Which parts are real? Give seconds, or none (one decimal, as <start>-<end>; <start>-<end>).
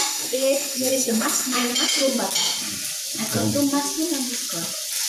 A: 1.7-5.1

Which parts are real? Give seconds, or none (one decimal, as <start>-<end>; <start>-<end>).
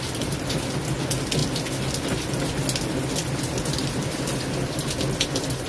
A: 0.0-5.7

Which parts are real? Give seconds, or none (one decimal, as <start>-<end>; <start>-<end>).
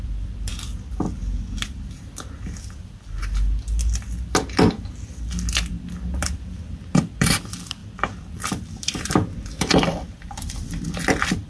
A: 0.5-5.7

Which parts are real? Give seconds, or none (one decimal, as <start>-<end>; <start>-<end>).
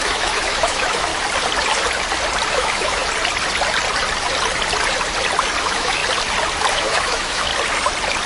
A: 1.1-2.5; 3.0-5.6; 6.0-6.7; 7.5-8.3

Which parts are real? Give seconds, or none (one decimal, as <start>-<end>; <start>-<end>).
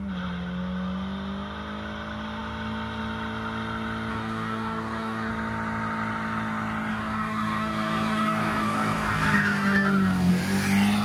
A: 0.0-4.1; 5.3-6.9; 10.3-11.0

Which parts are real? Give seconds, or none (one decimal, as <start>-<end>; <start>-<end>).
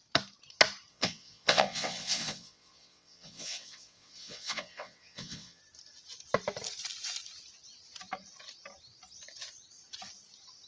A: 0.0-0.9; 5.6-10.7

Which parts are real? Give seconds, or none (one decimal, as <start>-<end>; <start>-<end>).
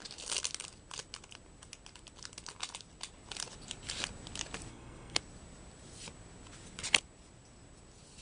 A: 0.0-4.7; 5.2-8.2